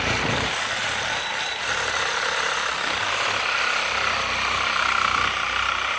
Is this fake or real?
fake